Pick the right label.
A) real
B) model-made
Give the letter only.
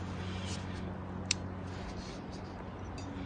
A